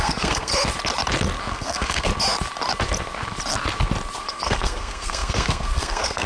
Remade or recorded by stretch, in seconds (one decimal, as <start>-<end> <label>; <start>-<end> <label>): 0.0-0.5 remade; 0.5-1.5 recorded; 1.5-2.1 remade; 2.1-4.2 recorded; 4.2-6.3 remade